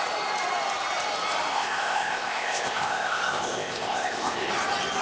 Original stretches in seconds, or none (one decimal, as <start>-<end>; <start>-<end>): 0.0-1.5; 4.5-5.0